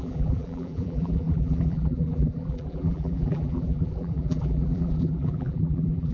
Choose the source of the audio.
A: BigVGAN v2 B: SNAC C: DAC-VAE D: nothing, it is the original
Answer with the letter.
A